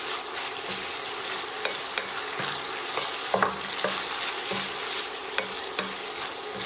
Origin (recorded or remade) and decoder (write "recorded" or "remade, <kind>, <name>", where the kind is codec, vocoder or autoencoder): recorded